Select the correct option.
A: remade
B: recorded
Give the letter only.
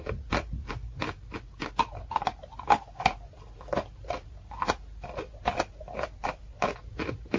B